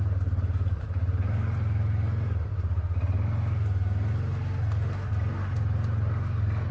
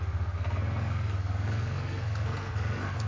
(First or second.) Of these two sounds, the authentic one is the first